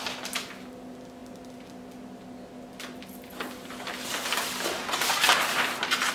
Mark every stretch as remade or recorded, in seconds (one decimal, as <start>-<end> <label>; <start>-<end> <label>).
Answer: 0.0-6.1 recorded